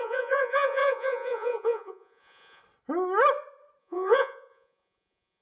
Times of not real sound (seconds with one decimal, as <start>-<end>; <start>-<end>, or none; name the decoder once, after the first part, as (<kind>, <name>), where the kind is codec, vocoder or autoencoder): 0.0-2.6 (vocoder, Vocos); 3.8-5.4